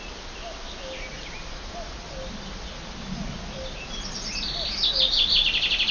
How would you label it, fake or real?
real